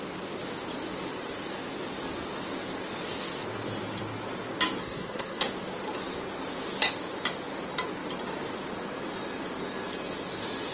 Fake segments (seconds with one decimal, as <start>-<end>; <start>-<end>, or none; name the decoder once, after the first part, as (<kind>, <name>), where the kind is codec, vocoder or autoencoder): 4.8-5.5 (codec, SNAC)